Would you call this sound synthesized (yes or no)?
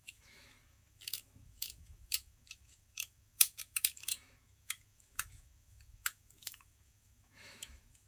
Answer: yes